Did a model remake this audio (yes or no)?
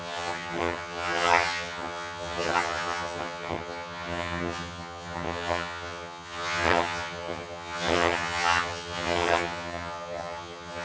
yes